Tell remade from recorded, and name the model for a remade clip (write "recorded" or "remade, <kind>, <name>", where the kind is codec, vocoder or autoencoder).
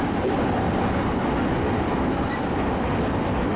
recorded